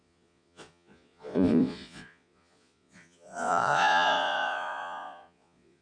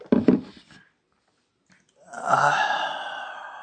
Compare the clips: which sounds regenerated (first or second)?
first